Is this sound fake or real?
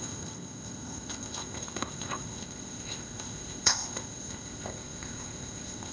fake